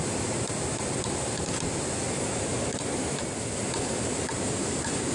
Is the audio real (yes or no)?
yes